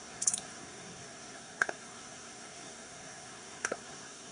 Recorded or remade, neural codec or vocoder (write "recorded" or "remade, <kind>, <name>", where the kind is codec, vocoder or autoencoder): remade, codec, SNAC